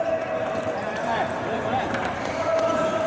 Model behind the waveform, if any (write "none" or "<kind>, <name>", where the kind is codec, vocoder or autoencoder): vocoder, BigVGAN v2